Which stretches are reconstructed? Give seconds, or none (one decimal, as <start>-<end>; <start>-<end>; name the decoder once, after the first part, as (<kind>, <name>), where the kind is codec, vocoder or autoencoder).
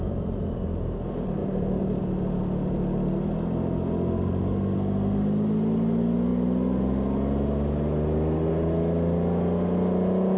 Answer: 1.4-2.0 (vocoder, BigVGAN v2)